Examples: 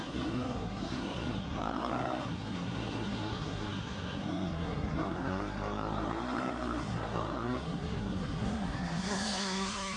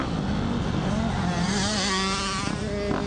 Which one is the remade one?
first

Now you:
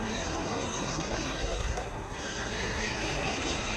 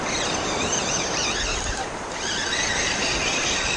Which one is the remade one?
first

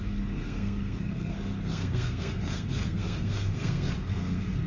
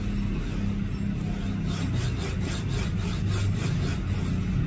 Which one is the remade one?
first